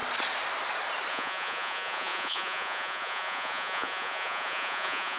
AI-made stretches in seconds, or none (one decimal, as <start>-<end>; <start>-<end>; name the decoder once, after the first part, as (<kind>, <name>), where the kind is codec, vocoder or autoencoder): 1.1-5.2 (vocoder, Vocos)